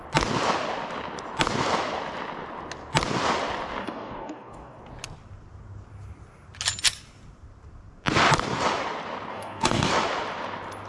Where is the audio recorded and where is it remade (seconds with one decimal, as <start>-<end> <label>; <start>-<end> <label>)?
0.0-3.8 recorded; 3.8-4.8 remade; 4.8-9.3 recorded; 9.3-9.9 remade; 9.9-10.9 recorded

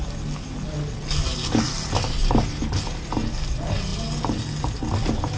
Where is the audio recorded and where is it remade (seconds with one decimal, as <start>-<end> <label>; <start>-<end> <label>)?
0.0-5.4 recorded